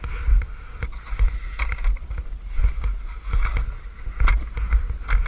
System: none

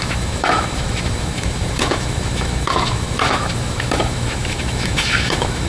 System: autoencoder, DAC-VAE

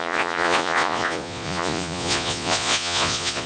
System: vocoder, Vocos